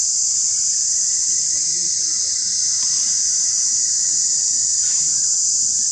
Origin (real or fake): real